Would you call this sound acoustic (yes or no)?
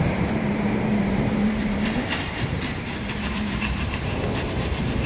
no